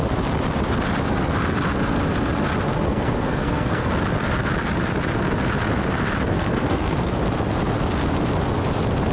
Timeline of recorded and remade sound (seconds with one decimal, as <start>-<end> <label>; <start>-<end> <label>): 0.0-2.9 recorded; 2.9-3.9 remade; 3.9-6.3 recorded; 6.3-7.2 remade; 7.2-9.1 recorded